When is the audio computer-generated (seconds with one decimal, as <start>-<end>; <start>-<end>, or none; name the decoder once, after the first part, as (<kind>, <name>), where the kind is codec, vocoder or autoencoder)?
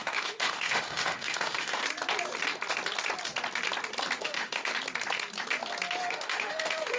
0.0-1.8 (autoencoder, DAC-VAE); 4.2-4.7; 6.0-7.0